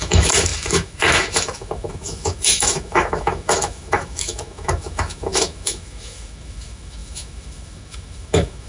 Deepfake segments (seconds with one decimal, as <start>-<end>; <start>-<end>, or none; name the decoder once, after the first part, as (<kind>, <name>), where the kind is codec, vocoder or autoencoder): 0.0-8.7 (autoencoder, DAC-VAE)